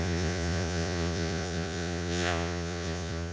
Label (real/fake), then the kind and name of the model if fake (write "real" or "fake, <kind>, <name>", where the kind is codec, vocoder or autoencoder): fake, vocoder, Vocos